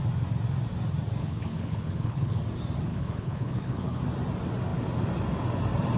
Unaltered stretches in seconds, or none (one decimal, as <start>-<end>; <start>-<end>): 0.0-1.2; 2.4-2.9; 4.0-6.0